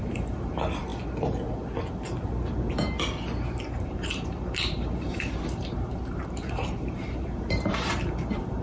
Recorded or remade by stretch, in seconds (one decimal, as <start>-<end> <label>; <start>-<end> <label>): 0.0-0.9 remade; 0.9-3.7 recorded; 3.7-8.6 remade